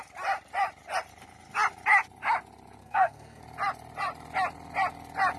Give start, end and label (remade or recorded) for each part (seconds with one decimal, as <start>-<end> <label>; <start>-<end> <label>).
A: 0.0-2.8 recorded; 2.8-3.4 remade; 3.4-5.4 recorded